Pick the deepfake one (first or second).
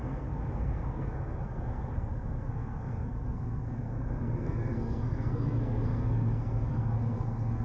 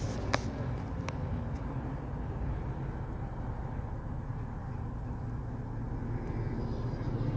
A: first